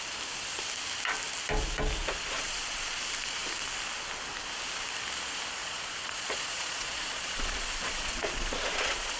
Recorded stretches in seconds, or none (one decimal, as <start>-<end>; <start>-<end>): 0.0-2.0; 3.0-5.6